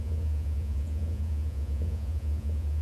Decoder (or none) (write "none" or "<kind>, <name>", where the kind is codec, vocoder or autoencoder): vocoder, Vocos